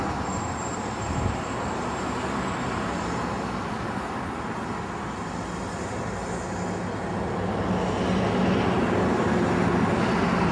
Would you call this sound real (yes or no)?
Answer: yes